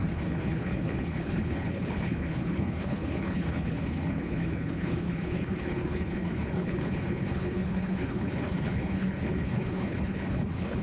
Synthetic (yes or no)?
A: yes